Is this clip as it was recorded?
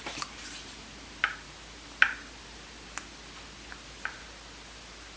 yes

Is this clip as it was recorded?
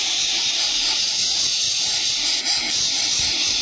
yes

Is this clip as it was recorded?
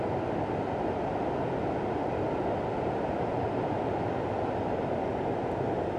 yes